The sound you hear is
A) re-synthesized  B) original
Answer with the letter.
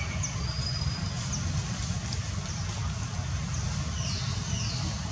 B